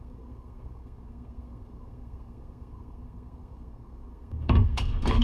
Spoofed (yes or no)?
yes